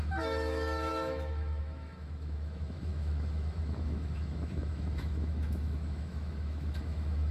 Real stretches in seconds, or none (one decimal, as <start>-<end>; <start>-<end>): none